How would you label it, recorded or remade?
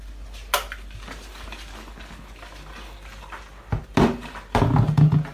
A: recorded